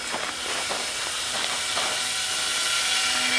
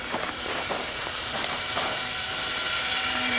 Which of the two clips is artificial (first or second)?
second